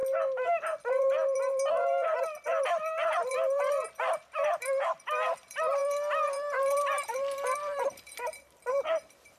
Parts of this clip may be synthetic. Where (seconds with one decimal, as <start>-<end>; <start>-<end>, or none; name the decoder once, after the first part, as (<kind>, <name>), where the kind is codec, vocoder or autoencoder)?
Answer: 1.0-9.4 (vocoder, BigVGAN v2)

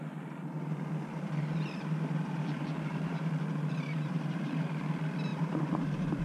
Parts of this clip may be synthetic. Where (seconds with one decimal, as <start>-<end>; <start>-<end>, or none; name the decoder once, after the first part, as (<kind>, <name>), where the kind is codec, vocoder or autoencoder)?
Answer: 1.1-4.8 (vocoder, BigVGAN v2); 5.3-6.2

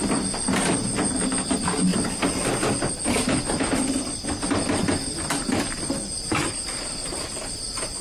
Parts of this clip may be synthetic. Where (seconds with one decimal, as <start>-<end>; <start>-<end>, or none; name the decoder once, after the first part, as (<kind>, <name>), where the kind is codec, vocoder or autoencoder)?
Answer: none